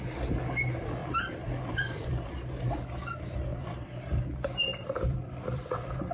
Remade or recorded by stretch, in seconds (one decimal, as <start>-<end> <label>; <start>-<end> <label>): 0.0-1.0 recorded; 1.0-2.3 remade; 2.3-3.5 recorded; 3.5-4.2 remade; 4.2-4.7 recorded; 4.7-6.1 remade